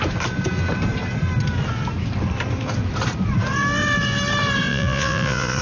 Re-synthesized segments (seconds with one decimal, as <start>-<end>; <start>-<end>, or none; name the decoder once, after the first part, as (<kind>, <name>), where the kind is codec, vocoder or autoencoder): 4.7-5.6 (vocoder, Vocos)